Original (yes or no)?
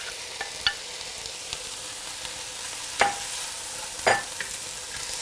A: yes